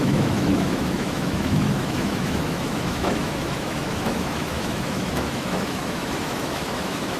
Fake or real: fake